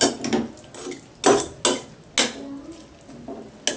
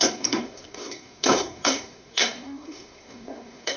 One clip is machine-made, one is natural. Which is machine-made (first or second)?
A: second